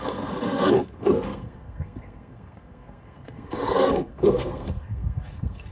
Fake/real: fake